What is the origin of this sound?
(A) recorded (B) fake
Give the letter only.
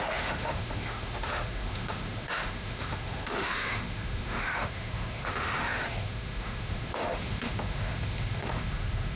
B